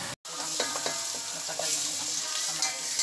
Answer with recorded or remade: recorded